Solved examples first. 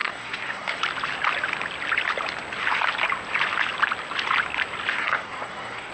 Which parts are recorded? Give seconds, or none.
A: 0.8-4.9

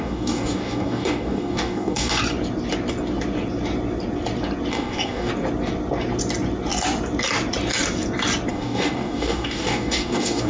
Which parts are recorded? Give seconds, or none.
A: 2.2-4.7; 5.3-8.5

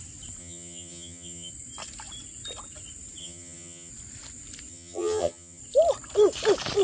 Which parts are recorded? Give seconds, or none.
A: 0.0-0.4; 1.5-3.2; 3.9-4.7; 5.6-6.8

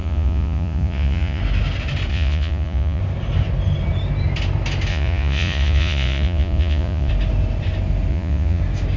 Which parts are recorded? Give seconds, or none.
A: 1.4-2.1; 3.0-4.9; 7.1-8.1; 8.6-9.0

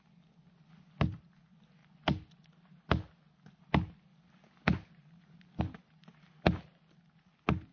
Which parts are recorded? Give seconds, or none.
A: 0.0-7.7

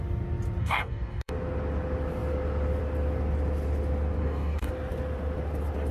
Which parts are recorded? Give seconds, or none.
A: 0.0-0.6; 1.3-4.2; 4.7-5.9

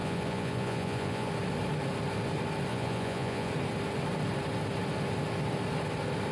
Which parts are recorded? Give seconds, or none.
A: 1.3-2.7; 3.5-6.3